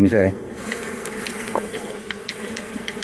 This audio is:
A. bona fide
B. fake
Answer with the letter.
B